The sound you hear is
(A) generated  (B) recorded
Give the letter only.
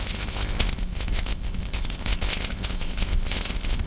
A